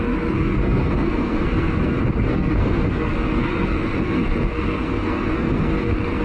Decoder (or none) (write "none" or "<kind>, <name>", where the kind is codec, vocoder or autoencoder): codec, SNAC